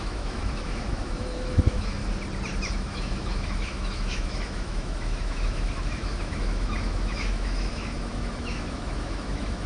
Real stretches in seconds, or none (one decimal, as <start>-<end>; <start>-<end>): 2.0-2.7

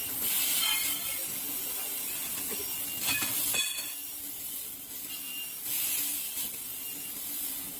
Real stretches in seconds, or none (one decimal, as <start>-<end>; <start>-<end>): 0.0-7.8

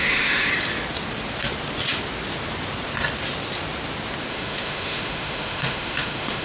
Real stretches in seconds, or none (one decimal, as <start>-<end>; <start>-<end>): 0.5-4.3